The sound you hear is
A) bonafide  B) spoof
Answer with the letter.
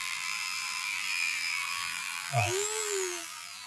B